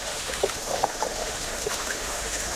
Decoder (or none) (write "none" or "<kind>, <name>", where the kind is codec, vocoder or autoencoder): autoencoder, DAC-VAE